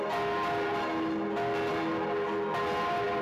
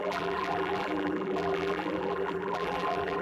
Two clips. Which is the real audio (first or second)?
first